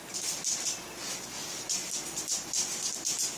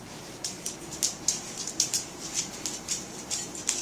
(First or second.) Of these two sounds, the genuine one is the first